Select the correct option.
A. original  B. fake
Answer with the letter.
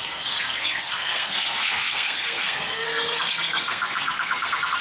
B